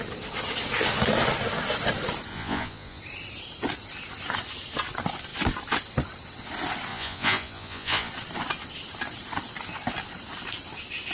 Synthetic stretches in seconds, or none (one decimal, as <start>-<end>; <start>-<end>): 2.3-3.0; 6.9-8.1